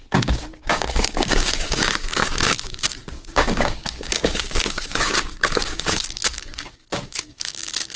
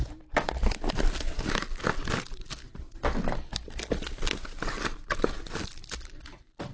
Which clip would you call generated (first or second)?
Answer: first